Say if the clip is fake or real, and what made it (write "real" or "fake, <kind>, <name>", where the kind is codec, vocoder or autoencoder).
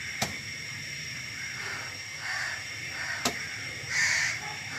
fake, vocoder, BigVGAN v2